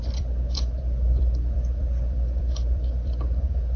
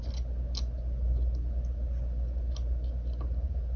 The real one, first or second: second